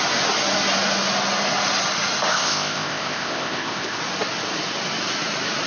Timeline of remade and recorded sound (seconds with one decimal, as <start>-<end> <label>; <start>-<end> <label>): 0.0-2.3 recorded; 2.3-4.0 remade; 4.0-5.7 recorded